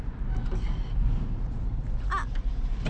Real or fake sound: real